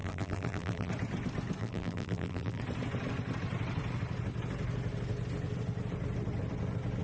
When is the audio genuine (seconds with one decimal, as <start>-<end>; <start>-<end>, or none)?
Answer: 0.9-1.6; 2.6-7.0